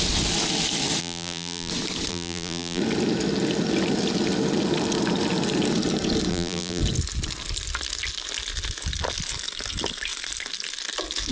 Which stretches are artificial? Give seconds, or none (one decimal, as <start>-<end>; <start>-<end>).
1.0-1.7; 2.1-2.8; 6.3-6.8